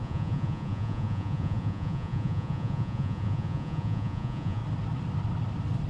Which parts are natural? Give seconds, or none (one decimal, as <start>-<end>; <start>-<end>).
4.6-5.9